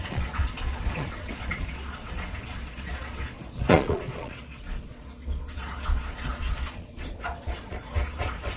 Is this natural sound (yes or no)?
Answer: no